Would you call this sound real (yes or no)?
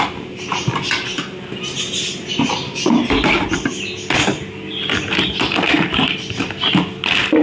yes